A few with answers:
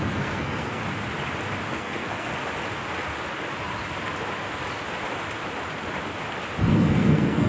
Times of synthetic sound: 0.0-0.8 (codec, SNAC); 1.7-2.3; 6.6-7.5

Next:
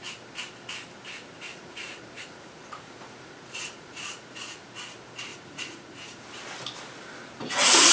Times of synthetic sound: 1.5-4.7 (vocoder, Vocos); 5.3-6.2

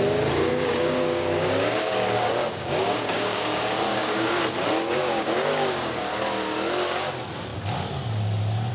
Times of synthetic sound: 0.5-4.4 (codec, DAC); 5.0-6.0

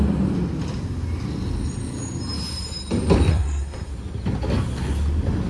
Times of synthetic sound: 3.3-3.9 (codec, SNAC)